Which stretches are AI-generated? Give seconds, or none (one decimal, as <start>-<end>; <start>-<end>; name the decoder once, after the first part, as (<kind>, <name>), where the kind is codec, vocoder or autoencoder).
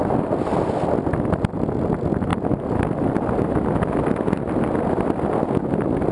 none